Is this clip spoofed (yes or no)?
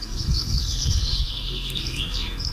yes